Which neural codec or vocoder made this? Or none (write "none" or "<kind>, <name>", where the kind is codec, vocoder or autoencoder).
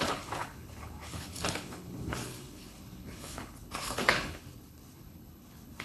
codec, HILCodec